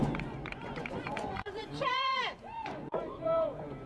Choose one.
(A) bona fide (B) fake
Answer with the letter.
B